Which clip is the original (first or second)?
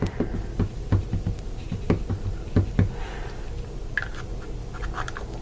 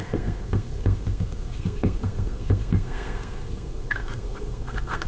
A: first